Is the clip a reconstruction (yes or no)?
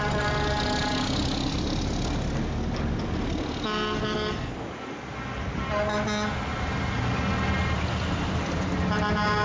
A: no